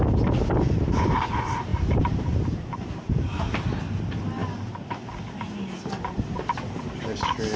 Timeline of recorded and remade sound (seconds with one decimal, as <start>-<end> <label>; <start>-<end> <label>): 0.0-1.7 recorded; 1.7-3.7 remade; 3.7-7.6 recorded